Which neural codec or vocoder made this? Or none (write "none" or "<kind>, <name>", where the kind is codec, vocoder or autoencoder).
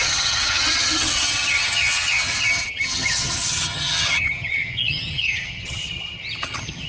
vocoder, HiFi-GAN